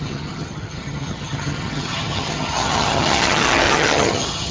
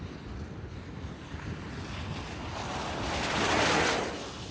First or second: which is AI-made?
first